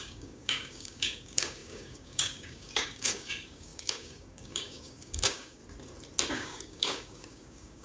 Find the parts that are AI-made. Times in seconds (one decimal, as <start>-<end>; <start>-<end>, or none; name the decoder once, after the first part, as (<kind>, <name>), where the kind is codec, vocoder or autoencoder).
0.0-5.6 (codec, DAC); 6.3-7.8